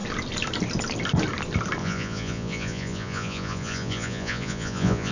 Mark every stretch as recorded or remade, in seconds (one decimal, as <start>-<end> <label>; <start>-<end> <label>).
0.0-1.8 recorded; 1.8-5.1 remade